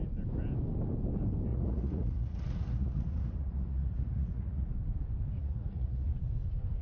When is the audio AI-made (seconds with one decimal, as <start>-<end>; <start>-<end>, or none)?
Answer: 1.5-4.7; 5.4-6.1